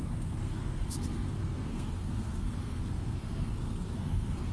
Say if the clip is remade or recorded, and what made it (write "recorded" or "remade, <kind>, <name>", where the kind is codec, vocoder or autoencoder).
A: remade, codec, SNAC